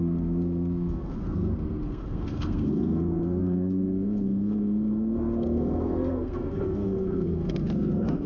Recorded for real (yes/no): no